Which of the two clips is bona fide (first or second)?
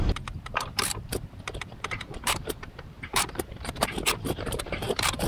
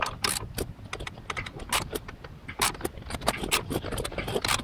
second